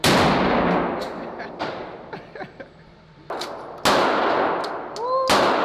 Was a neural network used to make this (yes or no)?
no